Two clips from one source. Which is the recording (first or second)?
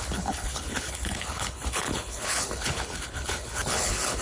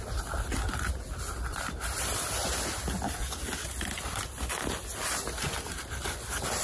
second